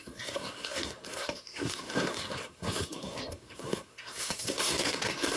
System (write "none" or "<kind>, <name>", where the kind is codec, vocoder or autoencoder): codec, SNAC